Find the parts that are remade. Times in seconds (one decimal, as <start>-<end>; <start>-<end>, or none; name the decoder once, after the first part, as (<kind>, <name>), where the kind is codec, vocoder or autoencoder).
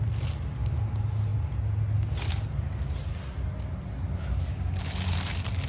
none